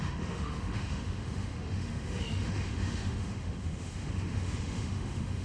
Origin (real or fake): fake